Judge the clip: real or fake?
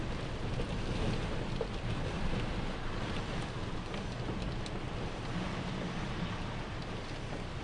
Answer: real